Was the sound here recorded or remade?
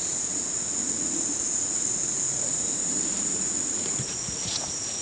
remade